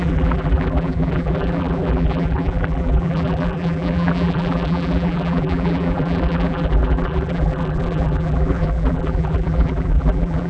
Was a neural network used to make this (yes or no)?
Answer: yes